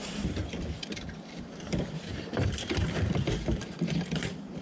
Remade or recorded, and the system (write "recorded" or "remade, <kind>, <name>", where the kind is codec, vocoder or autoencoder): remade, vocoder, BigVGAN v2